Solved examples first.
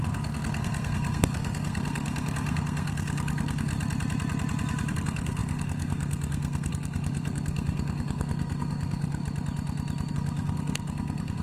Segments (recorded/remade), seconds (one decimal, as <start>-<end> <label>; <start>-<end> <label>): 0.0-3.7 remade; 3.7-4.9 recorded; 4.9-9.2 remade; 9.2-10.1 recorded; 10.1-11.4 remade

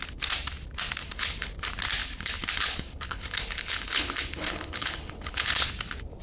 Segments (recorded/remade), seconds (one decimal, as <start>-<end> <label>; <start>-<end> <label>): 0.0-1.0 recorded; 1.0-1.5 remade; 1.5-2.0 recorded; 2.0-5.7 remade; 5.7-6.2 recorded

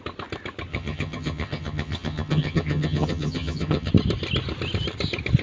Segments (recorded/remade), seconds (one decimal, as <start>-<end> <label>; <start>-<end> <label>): 0.0-0.7 recorded; 0.7-3.9 remade; 3.9-5.4 recorded

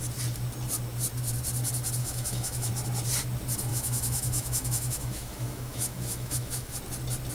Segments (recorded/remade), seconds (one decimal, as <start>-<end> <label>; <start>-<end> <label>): 0.0-2.0 recorded; 2.0-2.7 remade; 2.7-3.7 recorded; 3.7-6.8 remade; 6.8-7.3 recorded

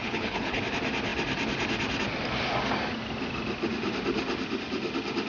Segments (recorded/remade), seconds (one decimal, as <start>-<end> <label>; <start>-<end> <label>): 0.0-0.6 remade; 0.6-5.3 recorded

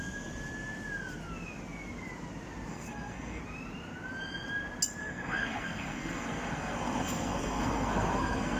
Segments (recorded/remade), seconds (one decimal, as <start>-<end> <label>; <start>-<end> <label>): 0.0-2.7 recorded; 2.7-3.4 remade; 3.4-5.0 recorded; 5.0-8.6 remade

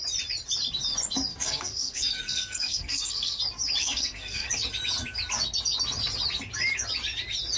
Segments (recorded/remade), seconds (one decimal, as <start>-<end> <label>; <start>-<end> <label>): 0.0-1.3 recorded; 1.3-3.4 remade; 3.4-3.8 recorded; 3.8-4.5 remade; 4.5-7.6 recorded

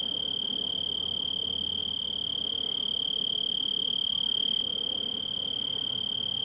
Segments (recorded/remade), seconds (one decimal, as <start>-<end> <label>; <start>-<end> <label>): 0.0-6.4 recorded